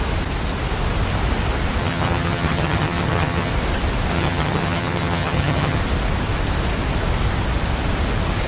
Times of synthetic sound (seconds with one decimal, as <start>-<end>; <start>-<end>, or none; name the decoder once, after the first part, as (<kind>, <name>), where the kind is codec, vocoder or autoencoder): 1.8-3.5 (vocoder, HiFi-GAN); 4.1-5.8